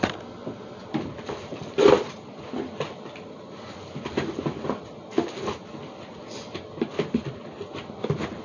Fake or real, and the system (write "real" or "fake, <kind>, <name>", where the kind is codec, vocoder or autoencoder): real